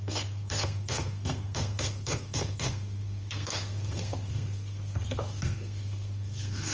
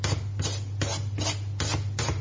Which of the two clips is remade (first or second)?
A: first